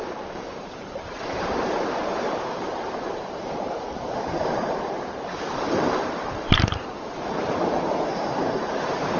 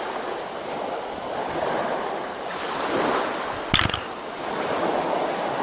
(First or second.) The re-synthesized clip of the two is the first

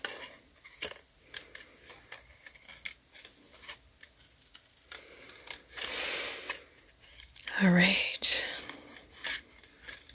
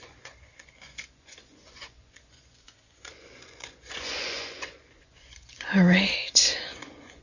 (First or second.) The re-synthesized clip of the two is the second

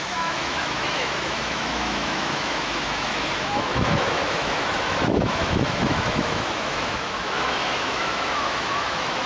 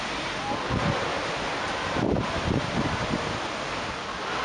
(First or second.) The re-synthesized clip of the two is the first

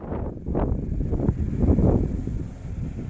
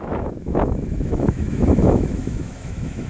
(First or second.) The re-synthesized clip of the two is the second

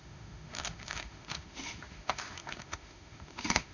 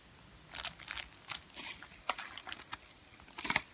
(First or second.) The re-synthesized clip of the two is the first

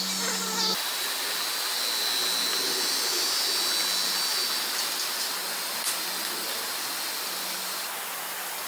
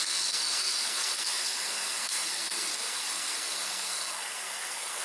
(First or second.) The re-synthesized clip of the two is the second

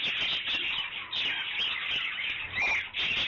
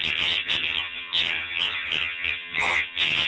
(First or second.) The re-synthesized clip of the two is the second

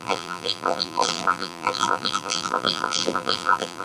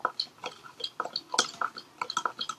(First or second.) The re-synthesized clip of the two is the first